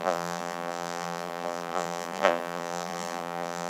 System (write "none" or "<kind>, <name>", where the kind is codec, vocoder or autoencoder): vocoder, BigVGAN v2